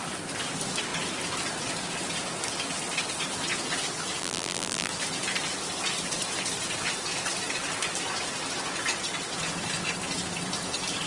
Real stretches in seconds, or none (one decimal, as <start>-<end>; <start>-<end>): 0.0-4.2; 4.9-11.1